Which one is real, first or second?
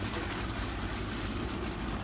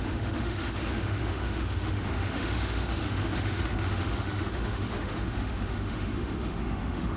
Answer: first